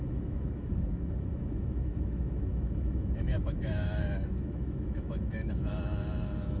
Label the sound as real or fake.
fake